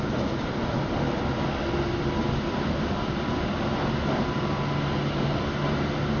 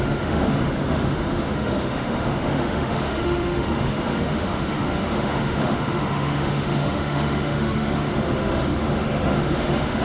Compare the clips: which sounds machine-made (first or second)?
second